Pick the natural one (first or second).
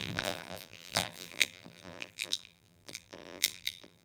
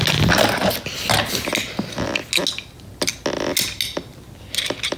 second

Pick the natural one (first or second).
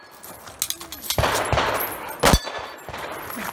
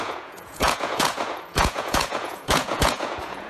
first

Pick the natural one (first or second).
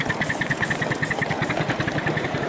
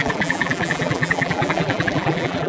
first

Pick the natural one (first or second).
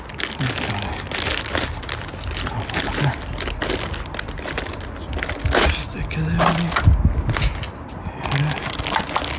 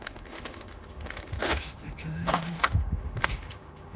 first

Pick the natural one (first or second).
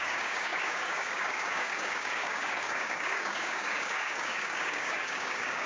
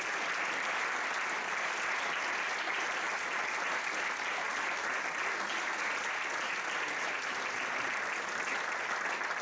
second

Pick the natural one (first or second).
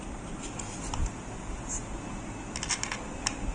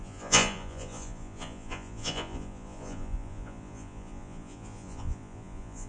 first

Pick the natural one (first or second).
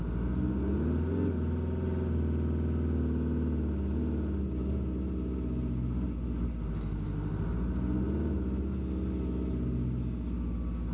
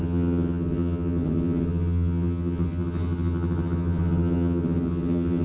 first